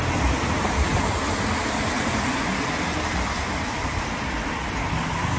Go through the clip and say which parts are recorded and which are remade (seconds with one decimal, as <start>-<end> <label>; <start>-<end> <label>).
0.0-5.4 recorded